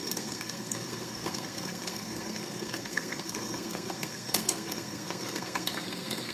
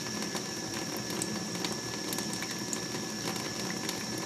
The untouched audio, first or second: second